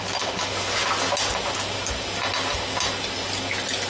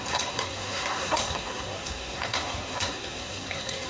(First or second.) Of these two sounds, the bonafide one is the first